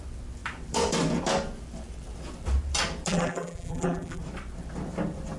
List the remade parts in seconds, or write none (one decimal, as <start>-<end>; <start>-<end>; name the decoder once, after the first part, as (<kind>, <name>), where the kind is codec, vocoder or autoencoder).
3.1-4.2 (vocoder, BigVGAN v2)